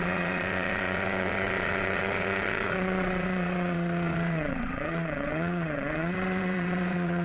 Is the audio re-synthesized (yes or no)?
yes